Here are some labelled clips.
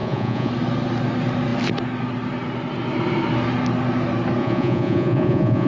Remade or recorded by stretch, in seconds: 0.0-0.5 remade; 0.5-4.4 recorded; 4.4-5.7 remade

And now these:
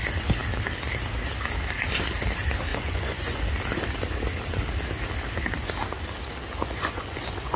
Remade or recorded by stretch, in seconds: 0.0-2.7 recorded; 2.7-3.4 remade; 3.4-6.6 recorded; 6.6-7.6 remade

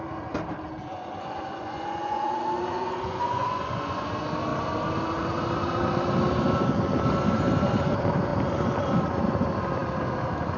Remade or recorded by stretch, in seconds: 0.0-0.8 recorded; 0.8-4.1 remade; 4.1-10.6 recorded

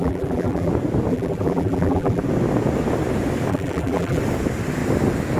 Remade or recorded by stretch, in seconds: 0.0-0.7 remade; 0.7-1.1 recorded; 1.1-2.2 remade; 2.2-3.5 recorded; 3.5-4.2 remade; 4.2-5.4 recorded

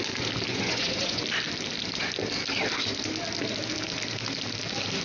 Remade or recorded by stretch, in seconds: 0.0-0.5 recorded; 0.5-1.2 remade; 1.2-5.0 recorded